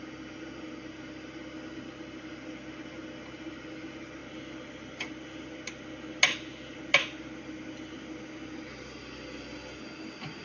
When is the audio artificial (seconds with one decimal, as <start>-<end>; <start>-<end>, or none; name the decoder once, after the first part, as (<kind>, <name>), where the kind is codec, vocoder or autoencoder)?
none